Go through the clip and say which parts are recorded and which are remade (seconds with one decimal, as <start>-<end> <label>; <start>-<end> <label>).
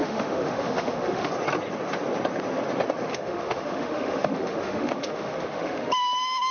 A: 0.0-1.3 remade; 1.3-3.1 recorded; 3.1-5.9 remade; 5.9-6.5 recorded